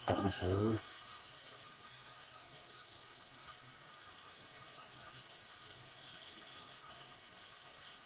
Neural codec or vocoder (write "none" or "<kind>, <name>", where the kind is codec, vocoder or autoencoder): codec, SNAC